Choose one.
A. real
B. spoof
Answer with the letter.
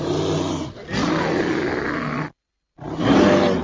A